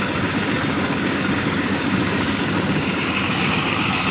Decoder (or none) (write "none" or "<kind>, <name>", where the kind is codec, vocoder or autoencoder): codec, DAC